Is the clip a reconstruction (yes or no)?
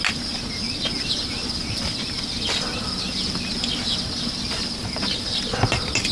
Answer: no